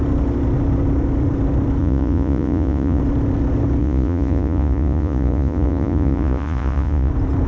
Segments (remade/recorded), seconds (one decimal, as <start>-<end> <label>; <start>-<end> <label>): 0.0-1.8 recorded; 1.8-3.0 remade; 3.0-3.8 recorded; 3.8-7.1 remade; 7.1-7.5 recorded